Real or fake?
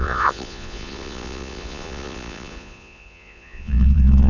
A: fake